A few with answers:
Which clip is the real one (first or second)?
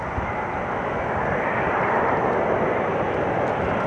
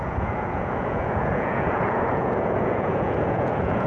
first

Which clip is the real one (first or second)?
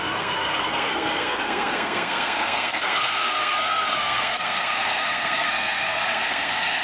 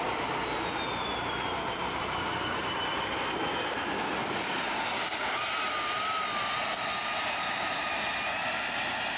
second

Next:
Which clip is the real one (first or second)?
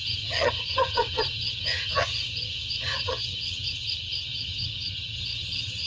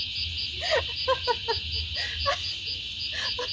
second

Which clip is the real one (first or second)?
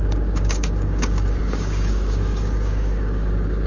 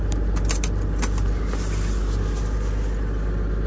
second